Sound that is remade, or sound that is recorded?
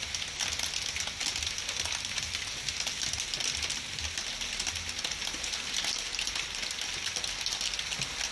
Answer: recorded